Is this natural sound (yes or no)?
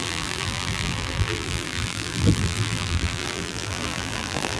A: no